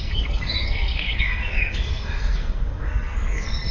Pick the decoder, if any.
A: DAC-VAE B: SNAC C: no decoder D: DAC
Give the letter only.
B